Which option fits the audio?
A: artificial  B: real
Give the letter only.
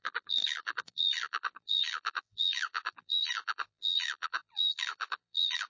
A